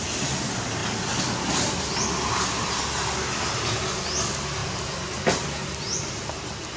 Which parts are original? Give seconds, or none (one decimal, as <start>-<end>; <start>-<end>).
0.0-6.8